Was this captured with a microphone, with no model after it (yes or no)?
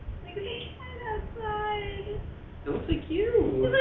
yes